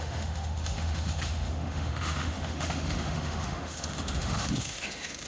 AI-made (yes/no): yes